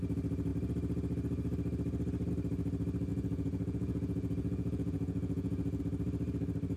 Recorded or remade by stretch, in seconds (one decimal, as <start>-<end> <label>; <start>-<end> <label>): 0.0-3.1 recorded; 3.1-5.8 remade; 5.8-6.8 recorded